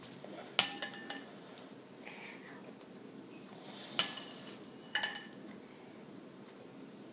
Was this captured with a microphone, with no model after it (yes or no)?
yes